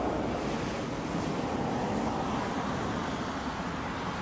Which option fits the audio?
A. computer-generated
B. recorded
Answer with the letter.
B